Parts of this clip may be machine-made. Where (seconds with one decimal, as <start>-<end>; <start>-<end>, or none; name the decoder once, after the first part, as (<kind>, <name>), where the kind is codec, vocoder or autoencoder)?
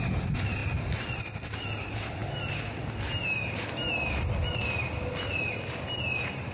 none